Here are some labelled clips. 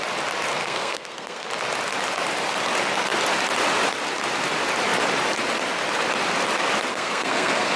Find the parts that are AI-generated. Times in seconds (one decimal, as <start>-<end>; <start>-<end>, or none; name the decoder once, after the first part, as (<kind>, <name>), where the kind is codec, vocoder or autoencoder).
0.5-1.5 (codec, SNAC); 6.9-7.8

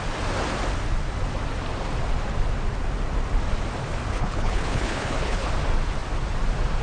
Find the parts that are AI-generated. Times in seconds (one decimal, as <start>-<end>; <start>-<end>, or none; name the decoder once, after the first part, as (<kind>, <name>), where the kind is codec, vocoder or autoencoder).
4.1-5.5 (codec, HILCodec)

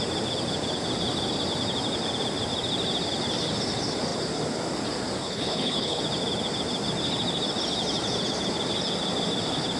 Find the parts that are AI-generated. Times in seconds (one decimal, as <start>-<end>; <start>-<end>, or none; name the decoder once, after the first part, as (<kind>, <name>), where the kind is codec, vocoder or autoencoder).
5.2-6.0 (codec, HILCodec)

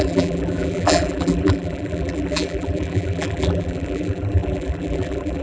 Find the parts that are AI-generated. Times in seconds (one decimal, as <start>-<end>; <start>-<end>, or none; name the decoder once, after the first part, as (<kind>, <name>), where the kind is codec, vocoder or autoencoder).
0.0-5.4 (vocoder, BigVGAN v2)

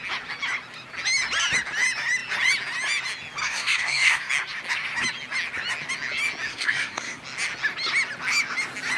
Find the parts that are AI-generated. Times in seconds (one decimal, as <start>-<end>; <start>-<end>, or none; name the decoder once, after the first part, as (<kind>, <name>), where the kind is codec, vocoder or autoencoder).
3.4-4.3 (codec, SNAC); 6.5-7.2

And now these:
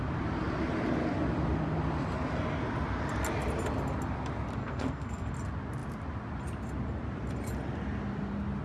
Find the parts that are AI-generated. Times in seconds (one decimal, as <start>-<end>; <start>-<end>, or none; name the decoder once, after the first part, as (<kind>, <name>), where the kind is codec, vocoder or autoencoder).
4.6-5.3 (codec, SNAC)

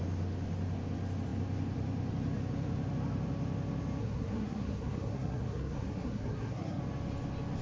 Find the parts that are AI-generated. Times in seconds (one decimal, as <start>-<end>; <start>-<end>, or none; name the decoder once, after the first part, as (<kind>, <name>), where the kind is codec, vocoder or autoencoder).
4.0-6.8 (codec, SNAC)

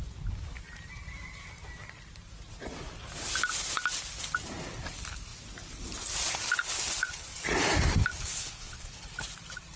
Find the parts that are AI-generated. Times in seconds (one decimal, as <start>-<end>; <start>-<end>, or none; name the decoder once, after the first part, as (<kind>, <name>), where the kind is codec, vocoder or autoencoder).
8.4-9.0 (vocoder, Vocos)